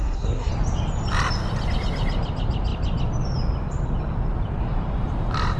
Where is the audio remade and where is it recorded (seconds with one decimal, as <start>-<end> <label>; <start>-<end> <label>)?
0.0-0.5 remade; 0.5-5.6 recorded